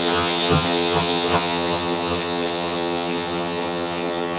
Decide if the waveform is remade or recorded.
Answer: remade